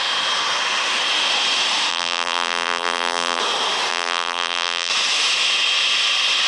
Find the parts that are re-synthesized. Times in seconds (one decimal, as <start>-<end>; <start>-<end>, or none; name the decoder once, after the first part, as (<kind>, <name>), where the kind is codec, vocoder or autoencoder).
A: 1.9-3.4 (vocoder, BigVGAN v2); 3.9-4.9